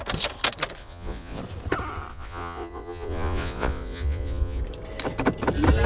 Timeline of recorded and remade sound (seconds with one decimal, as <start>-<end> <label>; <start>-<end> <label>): 0.0-0.8 recorded; 0.8-1.4 remade; 1.4-2.1 recorded; 2.1-4.6 remade; 4.6-5.9 recorded